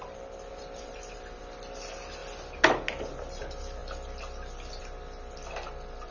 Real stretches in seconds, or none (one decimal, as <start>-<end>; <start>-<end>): 0.0-0.5; 1.4-6.1